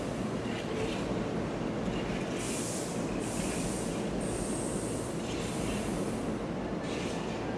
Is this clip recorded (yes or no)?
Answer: yes